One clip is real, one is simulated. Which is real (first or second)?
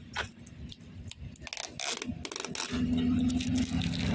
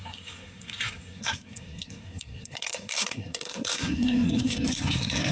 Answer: first